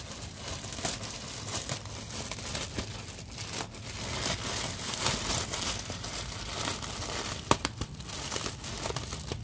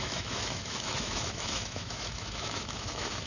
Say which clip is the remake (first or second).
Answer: second